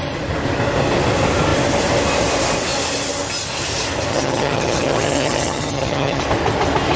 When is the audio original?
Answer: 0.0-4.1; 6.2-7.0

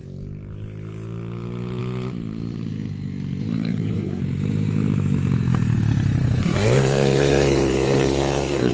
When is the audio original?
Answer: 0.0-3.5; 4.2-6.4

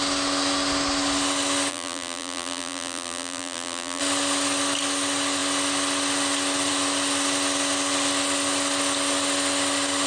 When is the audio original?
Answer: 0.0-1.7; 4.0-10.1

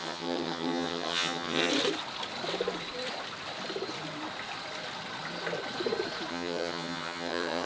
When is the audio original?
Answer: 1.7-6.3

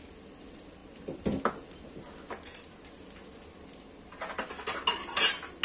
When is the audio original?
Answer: 0.0-5.6

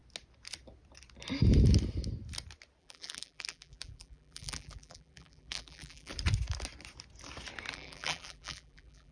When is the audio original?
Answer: 0.0-2.8; 6.1-7.7

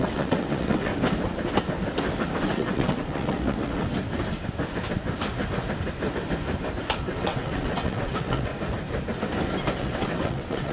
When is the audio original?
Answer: 0.9-2.4; 3.9-7.0; 8.5-9.8

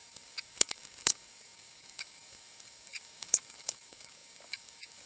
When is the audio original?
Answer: none